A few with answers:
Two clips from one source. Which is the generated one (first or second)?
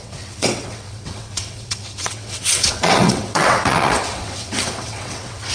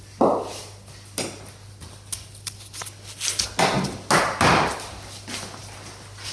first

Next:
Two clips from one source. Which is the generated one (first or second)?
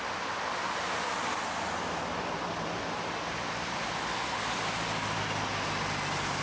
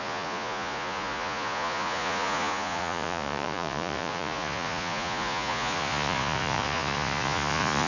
second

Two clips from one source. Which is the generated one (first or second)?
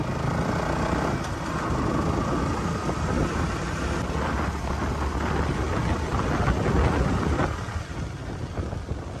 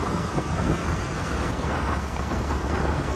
second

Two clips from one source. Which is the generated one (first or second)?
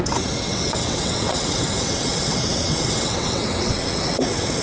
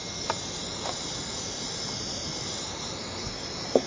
first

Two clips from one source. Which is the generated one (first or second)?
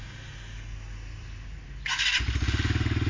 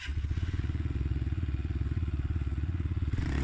second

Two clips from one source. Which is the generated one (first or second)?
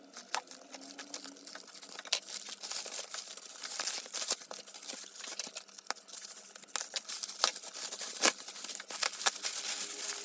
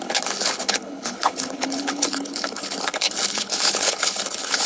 second